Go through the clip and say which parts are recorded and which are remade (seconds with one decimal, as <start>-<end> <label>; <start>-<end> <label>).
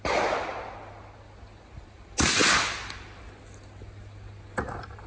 0.0-5.1 recorded